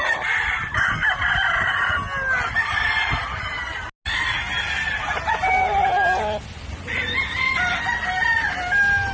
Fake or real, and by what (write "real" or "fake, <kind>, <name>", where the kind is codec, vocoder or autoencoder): real